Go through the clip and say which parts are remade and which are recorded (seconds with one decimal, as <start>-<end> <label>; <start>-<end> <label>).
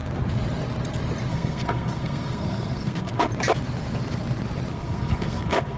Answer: 0.0-1.3 recorded; 1.3-3.3 remade; 3.3-4.7 recorded; 4.7-5.8 remade